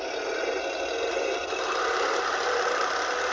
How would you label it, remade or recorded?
recorded